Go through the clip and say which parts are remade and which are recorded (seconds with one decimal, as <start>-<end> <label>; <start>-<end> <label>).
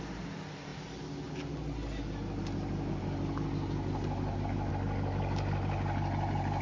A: 0.0-6.6 recorded